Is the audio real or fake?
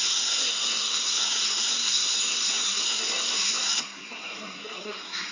fake